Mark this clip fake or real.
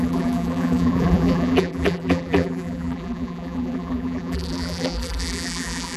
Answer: fake